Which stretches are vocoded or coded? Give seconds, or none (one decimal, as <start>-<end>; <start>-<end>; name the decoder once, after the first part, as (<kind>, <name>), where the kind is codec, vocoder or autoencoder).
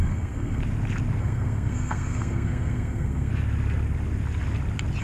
0.0-0.6 (codec, SNAC); 1.2-3.3